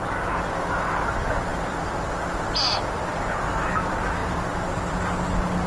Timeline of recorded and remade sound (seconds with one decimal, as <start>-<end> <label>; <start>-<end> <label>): 0.0-5.7 recorded